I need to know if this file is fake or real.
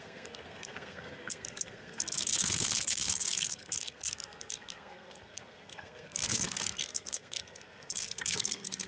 fake